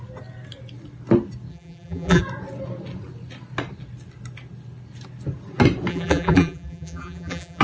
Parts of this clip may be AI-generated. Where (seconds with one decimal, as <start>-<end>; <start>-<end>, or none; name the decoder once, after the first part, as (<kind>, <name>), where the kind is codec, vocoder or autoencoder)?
1.5-2.2 (vocoder, BigVGAN v2); 5.9-7.6